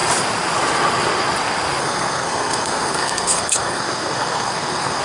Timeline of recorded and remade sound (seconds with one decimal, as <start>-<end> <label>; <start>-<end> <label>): 0.0-1.8 recorded; 1.8-5.0 remade